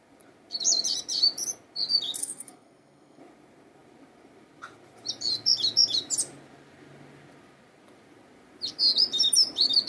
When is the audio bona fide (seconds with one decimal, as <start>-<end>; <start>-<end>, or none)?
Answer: 0.0-2.2; 3.2-9.9